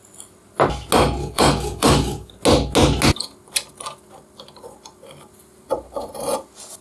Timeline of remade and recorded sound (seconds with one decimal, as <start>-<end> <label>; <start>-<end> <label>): 0.0-1.2 recorded; 1.2-2.3 remade; 2.3-6.8 recorded